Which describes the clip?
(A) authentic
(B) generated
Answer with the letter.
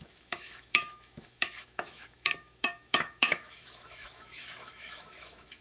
B